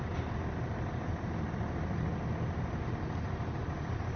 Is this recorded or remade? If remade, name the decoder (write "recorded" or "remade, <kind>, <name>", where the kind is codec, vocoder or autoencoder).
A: recorded